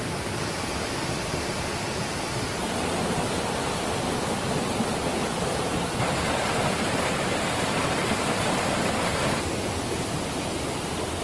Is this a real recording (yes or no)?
yes